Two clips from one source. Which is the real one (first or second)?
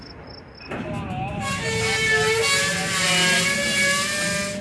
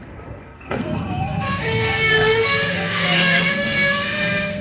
first